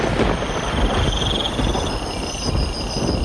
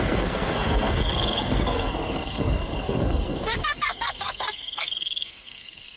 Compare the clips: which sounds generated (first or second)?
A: second